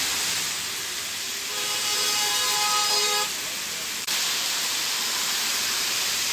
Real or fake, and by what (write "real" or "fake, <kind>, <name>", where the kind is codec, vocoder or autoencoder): fake, vocoder, BigVGAN v2